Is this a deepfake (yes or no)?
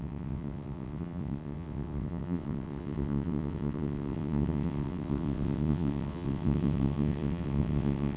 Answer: yes